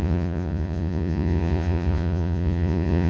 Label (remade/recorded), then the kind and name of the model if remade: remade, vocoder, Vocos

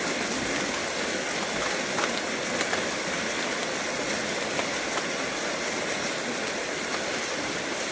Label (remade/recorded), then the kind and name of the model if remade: recorded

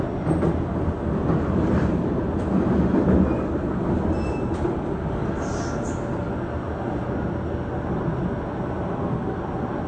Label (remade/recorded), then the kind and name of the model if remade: recorded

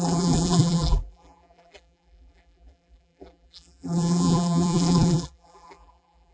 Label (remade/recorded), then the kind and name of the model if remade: remade, vocoder, BigVGAN v2